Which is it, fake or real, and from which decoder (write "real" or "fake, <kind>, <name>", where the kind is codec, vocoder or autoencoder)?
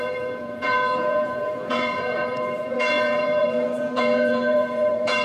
fake, vocoder, Vocos